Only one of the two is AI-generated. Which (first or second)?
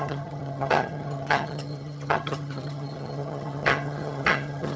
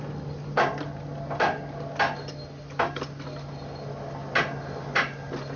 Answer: first